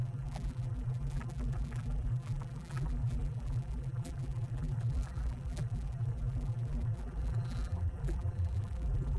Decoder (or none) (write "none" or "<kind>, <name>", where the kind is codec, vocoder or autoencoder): vocoder, BigVGAN v2